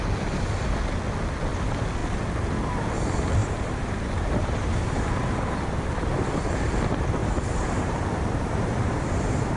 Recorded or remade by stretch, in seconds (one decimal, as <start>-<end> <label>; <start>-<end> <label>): 0.0-3.4 recorded; 3.4-6.1 remade; 6.1-7.2 recorded; 7.2-9.0 remade; 9.0-9.6 recorded

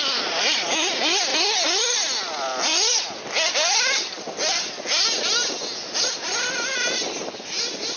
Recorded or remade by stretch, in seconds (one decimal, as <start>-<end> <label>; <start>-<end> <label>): 0.0-8.0 recorded